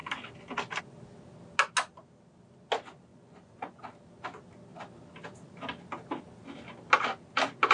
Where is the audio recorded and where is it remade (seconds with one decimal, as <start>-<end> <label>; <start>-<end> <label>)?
0.0-3.1 recorded; 3.1-3.8 remade; 3.8-7.7 recorded